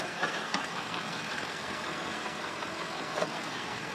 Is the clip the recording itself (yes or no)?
no